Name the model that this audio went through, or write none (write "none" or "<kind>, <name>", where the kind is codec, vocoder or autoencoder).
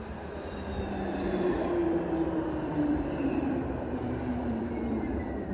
vocoder, BigVGAN v2